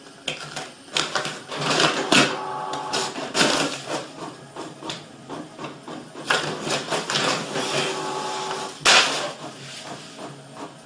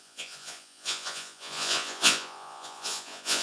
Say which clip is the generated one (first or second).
second